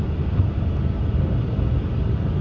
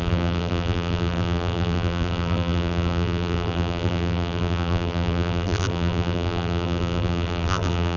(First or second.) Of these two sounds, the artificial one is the second